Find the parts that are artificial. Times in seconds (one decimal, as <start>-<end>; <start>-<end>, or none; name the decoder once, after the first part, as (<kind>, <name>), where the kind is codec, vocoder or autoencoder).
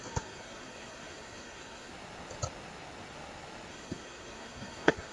0.0-1.9 (codec, SNAC); 3.7-5.1